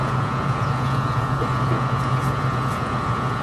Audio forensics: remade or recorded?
remade